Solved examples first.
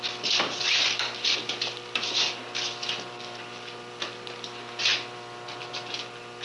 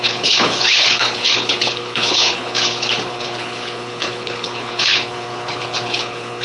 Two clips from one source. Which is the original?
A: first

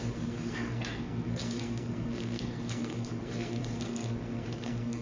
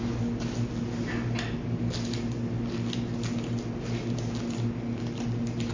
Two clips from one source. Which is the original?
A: second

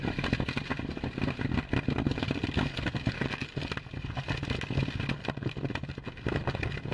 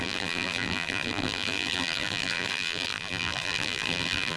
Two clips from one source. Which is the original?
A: first